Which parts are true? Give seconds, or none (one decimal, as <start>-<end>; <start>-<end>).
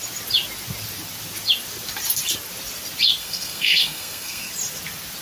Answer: 0.0-3.2; 4.5-5.2